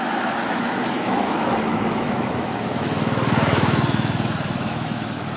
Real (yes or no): no